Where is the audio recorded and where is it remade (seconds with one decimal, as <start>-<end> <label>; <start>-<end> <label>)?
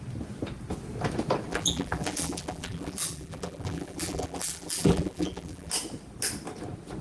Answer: 0.0-1.5 recorded; 1.5-5.7 remade; 5.7-7.0 recorded